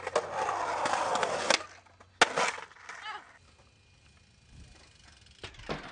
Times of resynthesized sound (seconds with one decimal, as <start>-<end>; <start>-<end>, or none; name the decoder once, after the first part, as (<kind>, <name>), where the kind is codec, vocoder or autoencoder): none